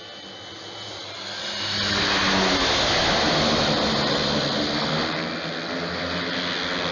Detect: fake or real real